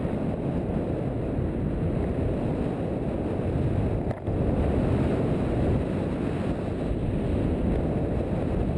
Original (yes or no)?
yes